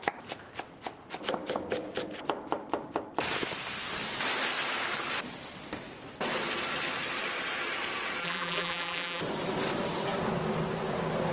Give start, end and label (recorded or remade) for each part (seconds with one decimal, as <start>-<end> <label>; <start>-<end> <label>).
0.0-8.2 recorded; 8.2-9.2 remade; 9.2-11.3 recorded